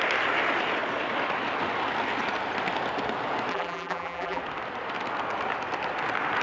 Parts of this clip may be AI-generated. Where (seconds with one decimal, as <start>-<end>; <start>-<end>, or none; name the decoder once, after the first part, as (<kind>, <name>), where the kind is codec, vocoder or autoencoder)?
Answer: 3.5-4.4 (vocoder, BigVGAN v2)